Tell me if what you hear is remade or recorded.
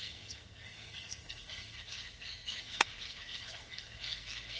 remade